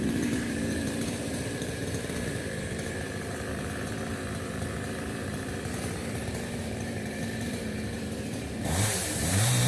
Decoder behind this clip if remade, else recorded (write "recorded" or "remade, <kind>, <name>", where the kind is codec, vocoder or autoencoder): remade, vocoder, BigVGAN v2